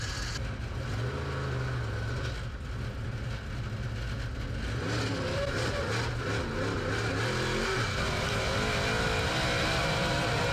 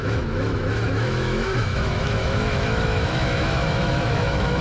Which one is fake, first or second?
second